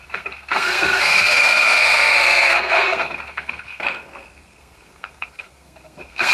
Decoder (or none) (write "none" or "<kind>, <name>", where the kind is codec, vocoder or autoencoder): codec, SNAC